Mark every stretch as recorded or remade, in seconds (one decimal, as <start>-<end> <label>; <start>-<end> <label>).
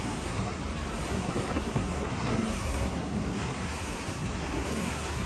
0.0-0.6 remade; 0.6-1.1 recorded; 1.1-5.3 remade